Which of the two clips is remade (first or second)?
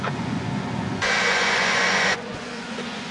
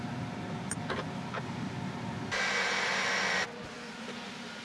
first